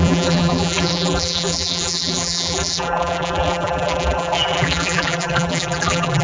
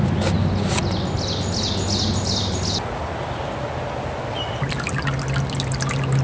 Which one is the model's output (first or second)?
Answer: first